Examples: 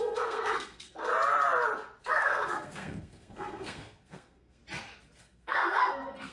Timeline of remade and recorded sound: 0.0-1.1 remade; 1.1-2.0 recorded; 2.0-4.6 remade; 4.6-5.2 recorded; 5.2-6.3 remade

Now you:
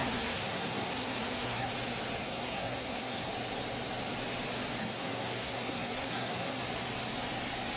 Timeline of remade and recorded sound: 0.0-1.7 remade; 1.7-2.2 recorded; 2.2-3.3 remade; 3.3-4.8 recorded; 4.8-6.6 remade; 6.6-7.8 recorded

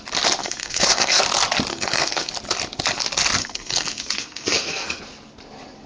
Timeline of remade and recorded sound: 0.0-0.4 recorded; 0.4-1.2 remade; 1.2-1.7 recorded; 1.7-2.3 remade; 2.3-3.4 recorded; 3.4-5.0 remade; 5.0-5.9 recorded

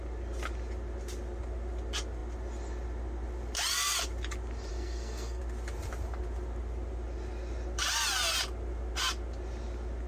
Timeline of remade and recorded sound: 0.0-4.7 recorded; 4.7-5.4 remade; 5.4-10.1 recorded

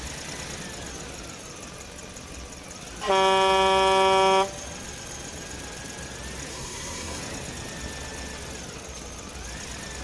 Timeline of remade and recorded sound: 0.0-6.5 recorded; 6.5-7.2 remade; 7.2-10.0 recorded

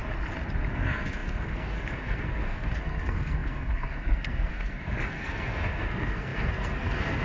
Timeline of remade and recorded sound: 0.0-0.7 recorded; 0.7-7.2 remade

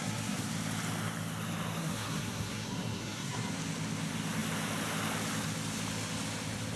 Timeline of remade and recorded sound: 0.0-0.5 remade; 0.5-1.8 recorded; 1.8-3.5 remade; 3.5-6.8 recorded

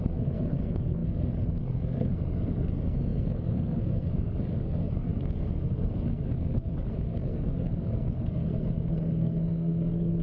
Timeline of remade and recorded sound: 0.0-10.2 remade